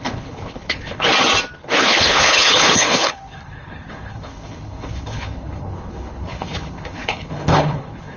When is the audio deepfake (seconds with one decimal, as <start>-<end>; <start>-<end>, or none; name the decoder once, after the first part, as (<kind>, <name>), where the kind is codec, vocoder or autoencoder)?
0.0-1.1 (codec, HILCodec); 1.6-8.2